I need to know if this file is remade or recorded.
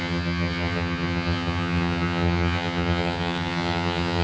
remade